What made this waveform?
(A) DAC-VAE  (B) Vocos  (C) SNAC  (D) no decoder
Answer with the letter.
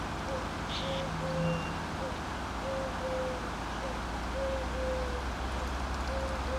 D